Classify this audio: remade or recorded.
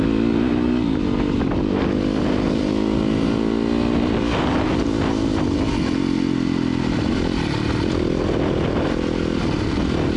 recorded